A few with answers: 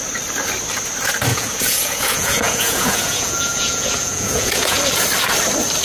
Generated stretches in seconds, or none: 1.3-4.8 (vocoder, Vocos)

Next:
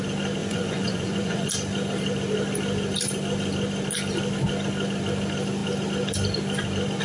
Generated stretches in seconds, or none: 0.4-1.5 (vocoder, Vocos)

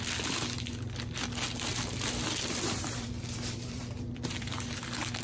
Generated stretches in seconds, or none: 1.7-4.8 (vocoder, BigVGAN v2)

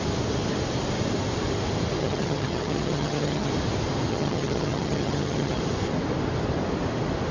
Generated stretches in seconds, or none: 2.0-3.5 (vocoder, HiFi-GAN); 4.1-5.6

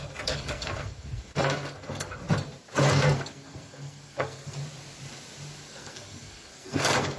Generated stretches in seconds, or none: 0.0-2.2 (codec, SNAC); 2.9-4.6; 5.7-7.2

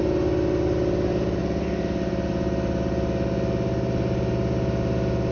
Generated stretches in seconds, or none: none